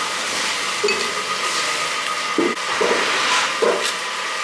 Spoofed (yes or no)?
no